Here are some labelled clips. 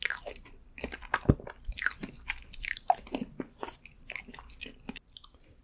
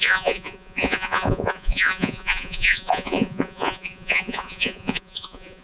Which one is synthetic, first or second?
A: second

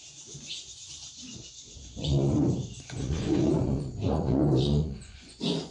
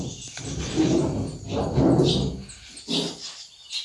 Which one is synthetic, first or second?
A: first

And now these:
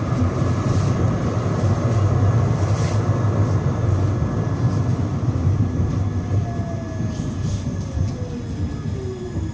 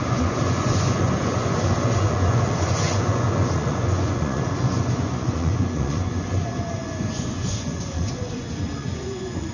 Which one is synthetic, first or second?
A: second